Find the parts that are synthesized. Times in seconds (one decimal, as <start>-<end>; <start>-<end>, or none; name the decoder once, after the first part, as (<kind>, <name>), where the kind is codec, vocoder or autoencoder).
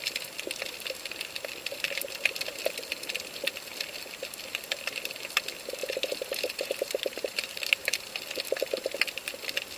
5.8-8.1 (vocoder, BigVGAN v2)